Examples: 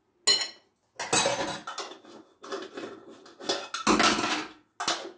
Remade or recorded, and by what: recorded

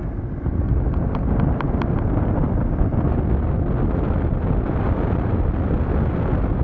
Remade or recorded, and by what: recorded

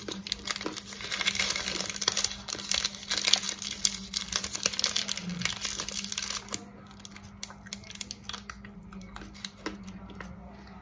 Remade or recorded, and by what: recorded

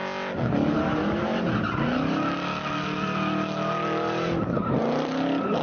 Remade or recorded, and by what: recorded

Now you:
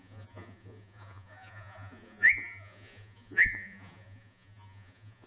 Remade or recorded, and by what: remade, vocoder, Vocos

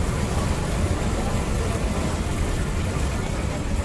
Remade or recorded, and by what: recorded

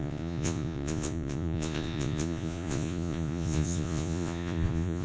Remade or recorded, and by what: remade, vocoder, Vocos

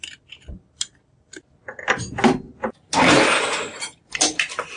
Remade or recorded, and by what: recorded